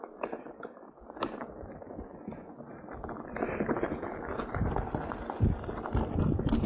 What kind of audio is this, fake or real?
real